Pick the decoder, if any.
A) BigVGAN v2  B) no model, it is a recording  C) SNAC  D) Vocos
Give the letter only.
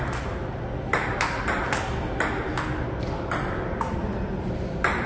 B